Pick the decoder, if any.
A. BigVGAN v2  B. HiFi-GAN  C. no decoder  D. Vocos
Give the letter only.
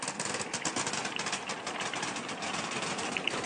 C